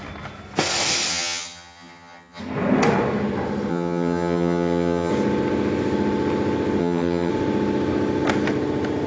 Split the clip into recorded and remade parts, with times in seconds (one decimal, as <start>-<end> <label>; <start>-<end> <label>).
0.0-1.1 recorded; 1.1-2.4 remade; 2.4-3.7 recorded; 3.7-5.1 remade; 5.1-6.8 recorded; 6.8-7.3 remade; 7.3-9.1 recorded